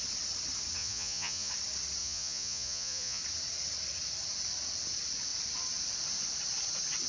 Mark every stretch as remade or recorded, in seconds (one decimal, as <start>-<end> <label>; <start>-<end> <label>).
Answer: 0.0-0.8 recorded; 0.8-1.5 remade; 1.5-2.0 recorded; 2.0-3.2 remade; 3.2-7.1 recorded